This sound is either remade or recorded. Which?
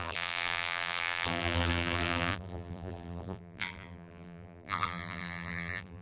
remade